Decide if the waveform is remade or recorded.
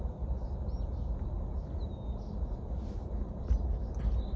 recorded